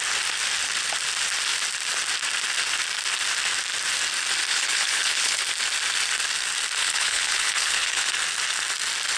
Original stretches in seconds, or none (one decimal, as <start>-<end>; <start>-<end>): 0.0-4.5; 5.4-6.8; 8.1-9.2